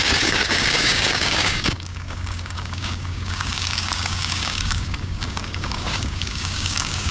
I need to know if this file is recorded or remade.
remade